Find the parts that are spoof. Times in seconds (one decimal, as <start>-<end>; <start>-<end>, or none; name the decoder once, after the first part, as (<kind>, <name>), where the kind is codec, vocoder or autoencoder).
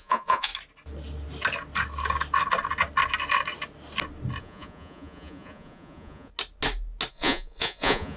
0.0-0.5 (vocoder, Vocos); 4.4-6.3; 7.1-8.2